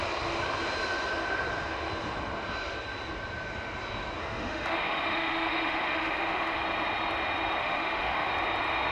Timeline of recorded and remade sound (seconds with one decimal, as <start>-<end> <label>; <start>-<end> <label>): 0.0-4.2 recorded; 4.2-6.6 remade; 6.6-7.6 recorded; 7.6-8.3 remade; 8.3-8.9 recorded